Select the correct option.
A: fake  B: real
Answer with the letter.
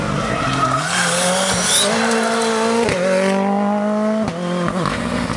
B